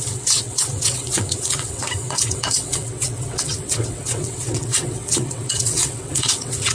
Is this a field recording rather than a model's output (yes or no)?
no